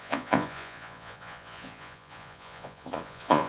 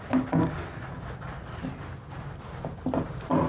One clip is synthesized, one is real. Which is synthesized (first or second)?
first